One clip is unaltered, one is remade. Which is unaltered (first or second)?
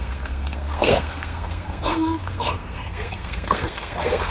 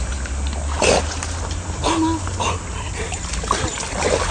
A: second